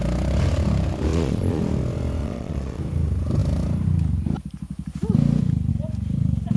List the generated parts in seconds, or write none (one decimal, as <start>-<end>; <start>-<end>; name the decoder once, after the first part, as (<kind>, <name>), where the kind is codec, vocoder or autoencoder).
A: 1.1-1.6 (vocoder, Vocos); 2.2-2.8

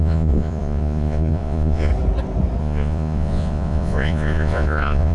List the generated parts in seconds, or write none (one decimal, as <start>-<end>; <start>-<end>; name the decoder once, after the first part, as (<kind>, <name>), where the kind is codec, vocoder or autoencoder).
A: 0.0-1.9 (vocoder, Vocos); 2.6-5.1